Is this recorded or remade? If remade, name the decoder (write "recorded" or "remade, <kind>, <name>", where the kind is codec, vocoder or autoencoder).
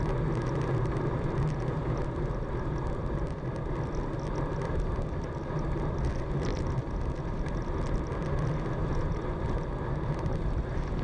recorded